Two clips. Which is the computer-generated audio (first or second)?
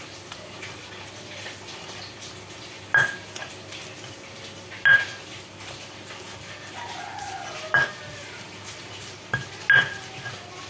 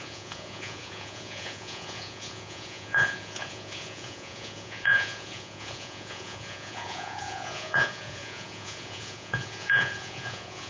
second